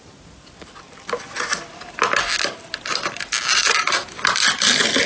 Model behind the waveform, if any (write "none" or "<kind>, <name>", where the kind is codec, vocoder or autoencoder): none